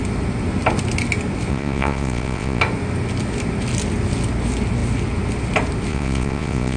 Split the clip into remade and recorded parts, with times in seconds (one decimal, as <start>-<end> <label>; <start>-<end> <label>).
0.0-1.5 recorded; 1.5-2.6 remade; 2.6-5.9 recorded; 5.9-6.8 remade